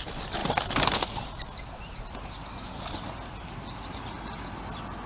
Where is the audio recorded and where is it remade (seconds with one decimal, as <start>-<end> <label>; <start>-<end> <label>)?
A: 0.0-5.1 recorded